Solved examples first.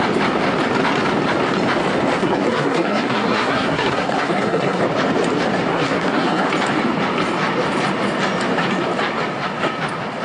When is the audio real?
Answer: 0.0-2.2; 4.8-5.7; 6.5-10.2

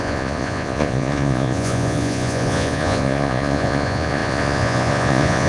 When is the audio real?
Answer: none

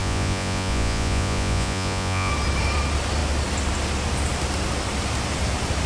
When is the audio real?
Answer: 2.3-5.9

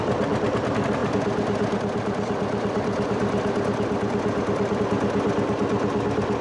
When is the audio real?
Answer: 0.0-6.4

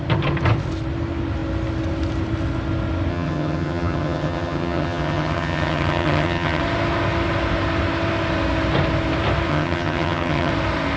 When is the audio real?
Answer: 0.0-3.1; 6.6-9.5; 10.5-11.0